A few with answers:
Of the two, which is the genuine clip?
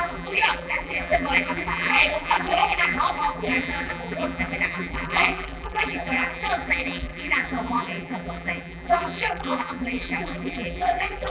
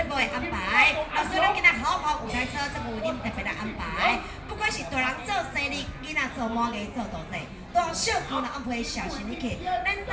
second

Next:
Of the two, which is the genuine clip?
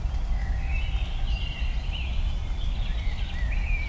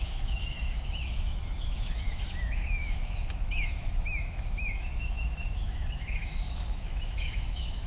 first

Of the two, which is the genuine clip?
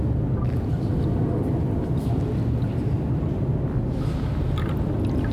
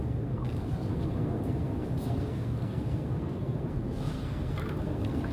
first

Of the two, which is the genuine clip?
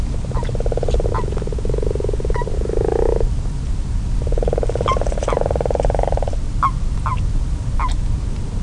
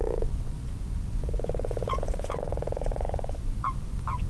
first